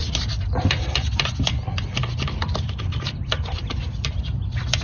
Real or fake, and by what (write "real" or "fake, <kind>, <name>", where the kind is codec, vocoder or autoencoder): real